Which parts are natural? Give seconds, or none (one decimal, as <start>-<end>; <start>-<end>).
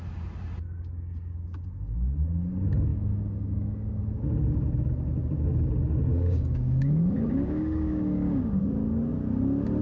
0.0-2.9; 4.0-6.1; 8.6-9.8